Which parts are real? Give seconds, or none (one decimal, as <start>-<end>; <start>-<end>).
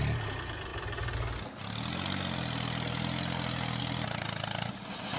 0.0-5.2